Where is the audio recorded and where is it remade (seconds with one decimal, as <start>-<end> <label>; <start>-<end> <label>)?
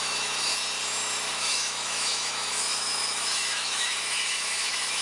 0.0-0.5 remade; 0.5-1.3 recorded; 1.3-5.0 remade